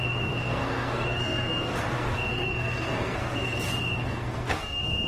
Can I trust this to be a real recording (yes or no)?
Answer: no